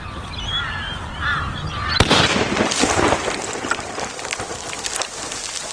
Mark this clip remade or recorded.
recorded